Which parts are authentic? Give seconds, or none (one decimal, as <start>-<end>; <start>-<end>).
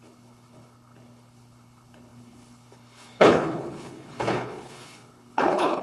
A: none